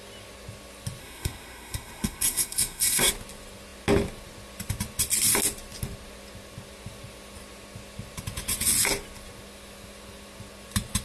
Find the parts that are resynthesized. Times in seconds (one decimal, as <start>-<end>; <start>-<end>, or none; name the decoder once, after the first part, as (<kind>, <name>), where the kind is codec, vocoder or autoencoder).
1.0-3.1 (codec, SNAC)